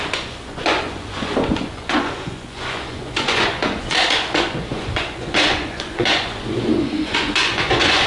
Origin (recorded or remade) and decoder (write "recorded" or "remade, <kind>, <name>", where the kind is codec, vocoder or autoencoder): remade, vocoder, Vocos